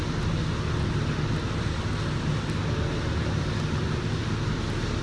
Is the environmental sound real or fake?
real